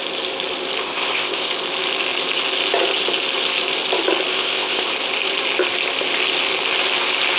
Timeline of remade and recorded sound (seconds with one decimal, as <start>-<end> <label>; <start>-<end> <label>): 0.0-0.8 recorded; 0.8-1.5 remade; 1.5-4.3 recorded; 4.3-4.9 remade; 4.9-7.4 recorded